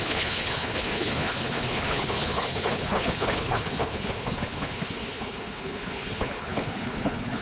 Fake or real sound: fake